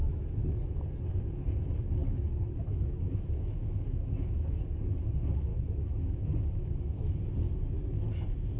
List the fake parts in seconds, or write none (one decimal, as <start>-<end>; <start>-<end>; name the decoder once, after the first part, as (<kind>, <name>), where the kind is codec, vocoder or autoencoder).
0.0-0.8 (autoencoder, DAC-VAE); 2.0-4.6; 5.5-7.2